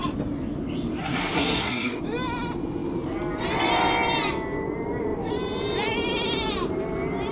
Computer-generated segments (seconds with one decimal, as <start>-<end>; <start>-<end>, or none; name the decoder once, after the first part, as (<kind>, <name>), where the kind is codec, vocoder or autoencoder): 1.0-2.0 (codec, SNAC)